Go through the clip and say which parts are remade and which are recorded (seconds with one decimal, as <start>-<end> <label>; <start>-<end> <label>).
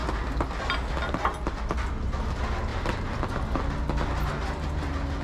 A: 0.0-2.7 recorded; 2.7-3.6 remade; 3.6-5.2 recorded